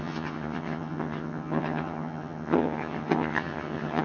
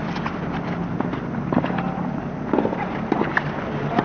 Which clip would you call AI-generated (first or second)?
first